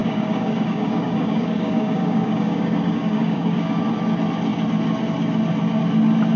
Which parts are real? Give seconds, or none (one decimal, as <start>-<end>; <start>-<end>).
3.8-6.4

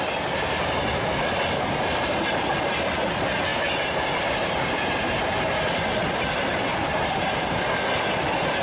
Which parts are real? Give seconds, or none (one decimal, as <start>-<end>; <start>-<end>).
0.0-3.5; 4.8-6.7; 7.3-8.6

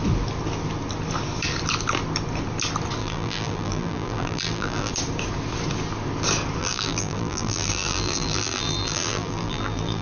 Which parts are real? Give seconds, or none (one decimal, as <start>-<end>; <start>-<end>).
0.0-3.0; 4.9-6.6